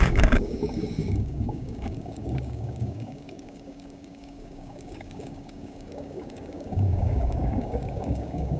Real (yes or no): no